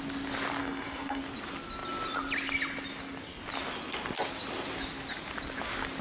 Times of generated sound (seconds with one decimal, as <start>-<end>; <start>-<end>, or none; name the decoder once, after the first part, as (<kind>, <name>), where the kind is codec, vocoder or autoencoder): 0.6-1.2 (codec, SNAC)